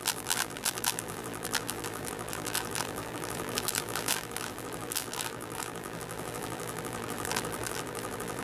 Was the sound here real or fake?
fake